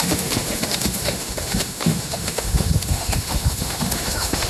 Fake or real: fake